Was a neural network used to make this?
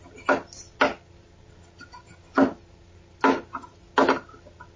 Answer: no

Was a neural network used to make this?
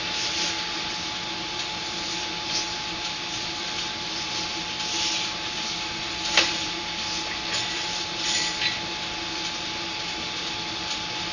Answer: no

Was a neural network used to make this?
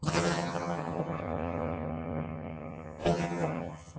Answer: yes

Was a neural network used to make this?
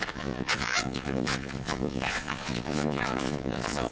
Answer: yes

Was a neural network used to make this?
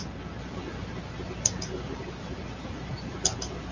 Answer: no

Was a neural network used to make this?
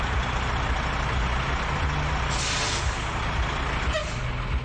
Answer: no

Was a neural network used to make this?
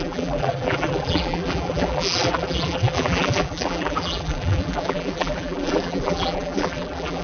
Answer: yes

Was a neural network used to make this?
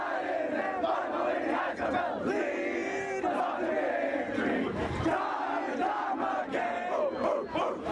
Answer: no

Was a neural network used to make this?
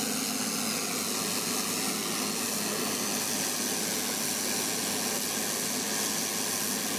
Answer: no